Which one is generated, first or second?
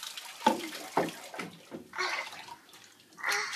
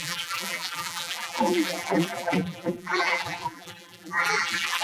second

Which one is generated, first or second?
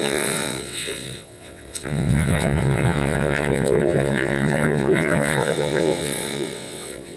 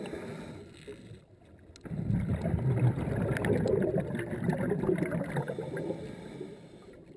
first